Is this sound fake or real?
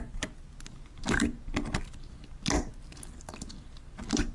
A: real